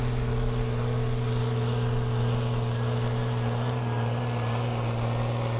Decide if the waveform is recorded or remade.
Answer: recorded